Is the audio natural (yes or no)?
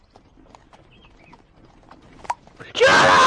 yes